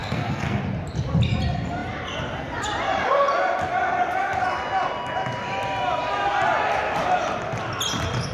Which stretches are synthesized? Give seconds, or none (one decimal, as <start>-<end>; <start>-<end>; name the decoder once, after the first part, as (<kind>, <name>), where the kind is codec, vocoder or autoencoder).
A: 0.0-0.6 (codec, SNAC)